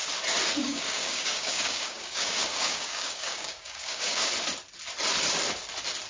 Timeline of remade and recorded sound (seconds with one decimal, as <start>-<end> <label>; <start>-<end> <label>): 0.0-0.6 recorded; 0.6-4.3 remade; 4.3-6.1 recorded